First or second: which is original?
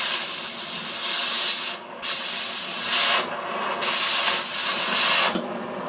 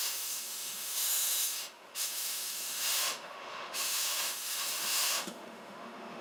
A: first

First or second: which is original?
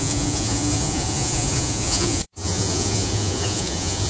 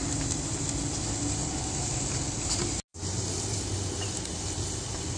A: second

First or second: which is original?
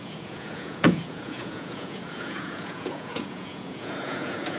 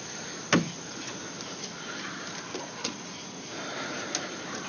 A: second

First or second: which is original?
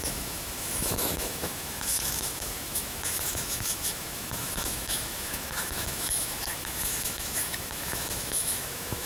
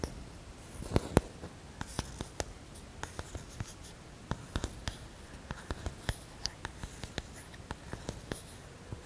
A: second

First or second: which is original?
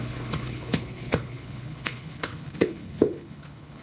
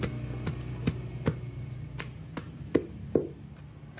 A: second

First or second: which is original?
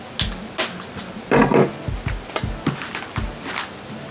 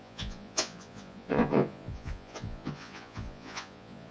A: first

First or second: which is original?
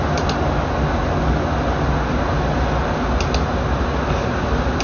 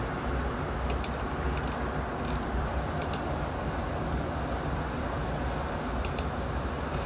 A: first